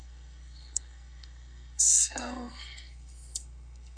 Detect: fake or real fake